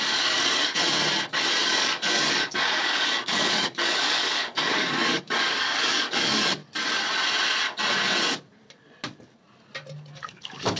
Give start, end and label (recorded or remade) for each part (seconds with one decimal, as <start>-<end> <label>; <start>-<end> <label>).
0.0-0.8 remade; 0.8-1.6 recorded; 1.6-6.6 remade; 6.6-10.1 recorded; 10.1-10.8 remade